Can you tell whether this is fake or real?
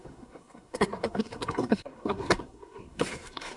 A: fake